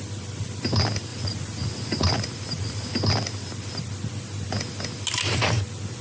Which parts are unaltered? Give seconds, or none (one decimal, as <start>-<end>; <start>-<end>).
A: 0.0-1.1; 2.9-6.0